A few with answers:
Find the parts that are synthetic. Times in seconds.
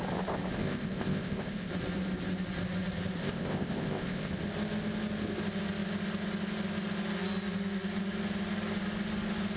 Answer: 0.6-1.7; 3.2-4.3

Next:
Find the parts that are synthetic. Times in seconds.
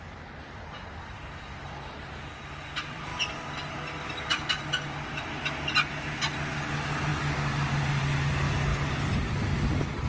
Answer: none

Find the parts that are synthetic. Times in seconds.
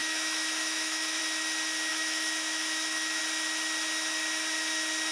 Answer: 0.0-1.2; 1.9-3.2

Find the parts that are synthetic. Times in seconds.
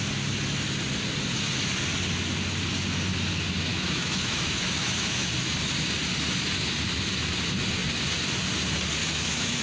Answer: 3.7-5.3; 9.0-9.6